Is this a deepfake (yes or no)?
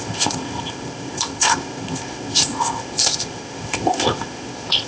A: yes